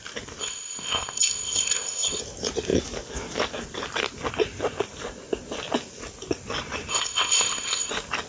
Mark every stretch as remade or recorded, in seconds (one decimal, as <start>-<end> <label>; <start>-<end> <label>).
0.0-0.4 recorded; 0.4-2.2 remade; 2.2-6.9 recorded; 6.9-7.9 remade; 7.9-8.3 recorded